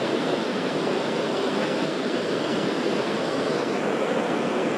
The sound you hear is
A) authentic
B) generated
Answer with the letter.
B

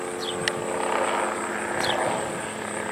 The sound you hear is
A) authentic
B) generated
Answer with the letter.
A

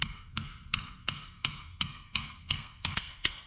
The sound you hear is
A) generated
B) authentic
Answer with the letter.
A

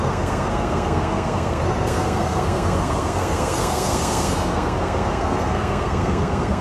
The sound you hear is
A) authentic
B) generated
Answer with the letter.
B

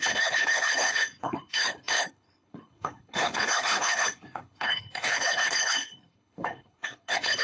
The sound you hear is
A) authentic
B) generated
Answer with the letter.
B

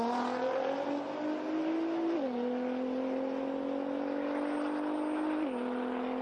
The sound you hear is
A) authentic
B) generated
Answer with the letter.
A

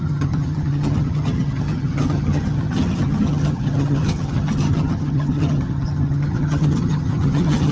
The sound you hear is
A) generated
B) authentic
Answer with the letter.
A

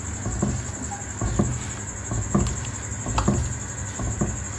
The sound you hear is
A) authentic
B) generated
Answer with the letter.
A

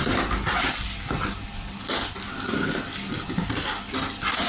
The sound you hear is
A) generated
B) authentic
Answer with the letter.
B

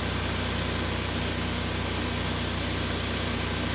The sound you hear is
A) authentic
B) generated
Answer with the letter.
A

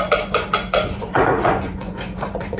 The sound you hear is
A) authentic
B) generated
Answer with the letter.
B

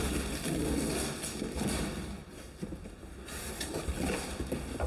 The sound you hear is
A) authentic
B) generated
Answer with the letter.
A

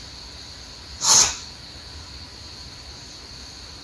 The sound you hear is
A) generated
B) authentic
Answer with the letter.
B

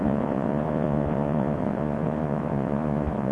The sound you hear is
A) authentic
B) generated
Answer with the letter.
B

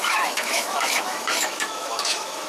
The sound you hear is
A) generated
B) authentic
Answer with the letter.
A